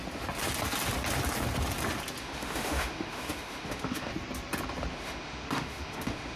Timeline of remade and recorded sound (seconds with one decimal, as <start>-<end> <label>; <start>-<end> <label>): 0.0-2.2 recorded; 2.2-4.1 remade; 4.1-4.9 recorded; 4.9-6.4 remade